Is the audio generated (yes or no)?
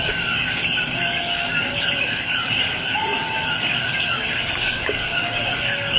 yes